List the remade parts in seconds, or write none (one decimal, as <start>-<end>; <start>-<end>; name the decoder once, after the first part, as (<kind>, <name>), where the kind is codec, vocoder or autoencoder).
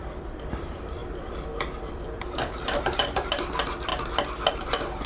0.0-3.9 (vocoder, BigVGAN v2); 4.5-5.1